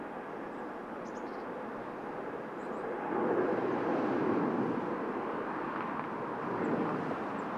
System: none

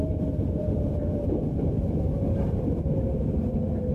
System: vocoder, BigVGAN v2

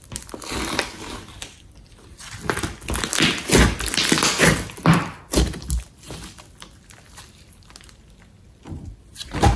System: none